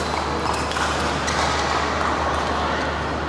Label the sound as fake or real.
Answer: real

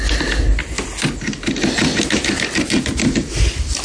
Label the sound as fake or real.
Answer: real